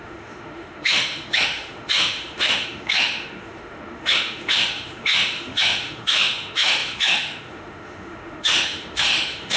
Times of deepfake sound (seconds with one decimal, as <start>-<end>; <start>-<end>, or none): 0.0-9.6